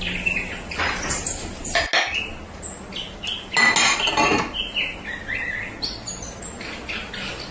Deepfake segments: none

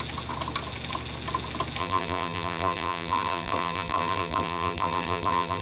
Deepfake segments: 1.8-5.6 (vocoder, BigVGAN v2)

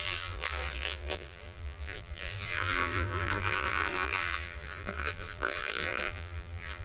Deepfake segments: 0.0-6.8 (vocoder, BigVGAN v2)

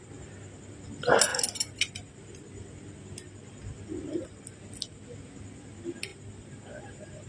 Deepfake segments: none

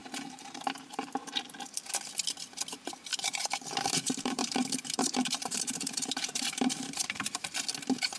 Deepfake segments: 0.0-1.1 (vocoder, BigVGAN v2); 3.1-7.6

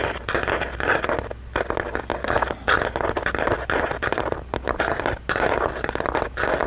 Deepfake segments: 2.1-5.7 (vocoder, BigVGAN v2)